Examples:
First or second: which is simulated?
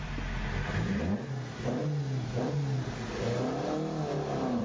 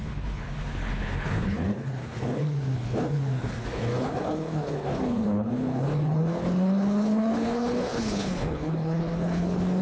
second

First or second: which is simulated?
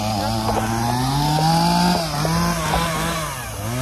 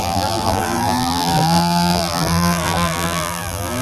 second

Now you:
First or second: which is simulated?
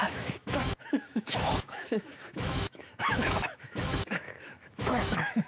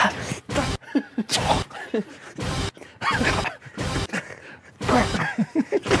first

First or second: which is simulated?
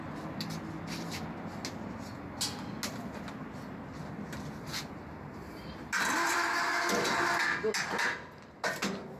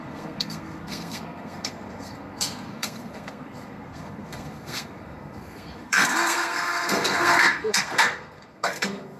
second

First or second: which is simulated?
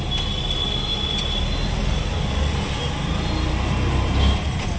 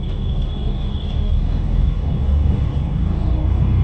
second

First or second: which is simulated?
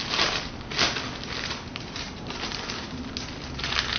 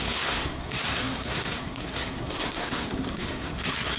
second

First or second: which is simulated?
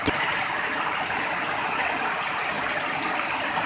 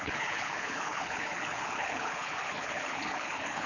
second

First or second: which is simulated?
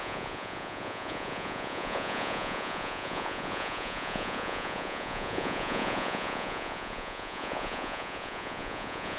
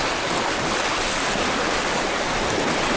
first